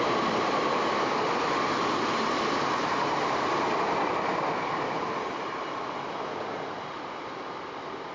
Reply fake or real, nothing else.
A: real